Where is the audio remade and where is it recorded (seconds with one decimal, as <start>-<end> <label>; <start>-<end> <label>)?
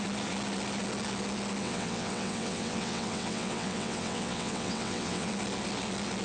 0.0-1.6 recorded; 1.6-5.3 remade; 5.3-6.2 recorded